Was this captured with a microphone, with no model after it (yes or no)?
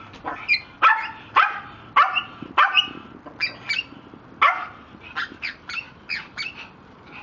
yes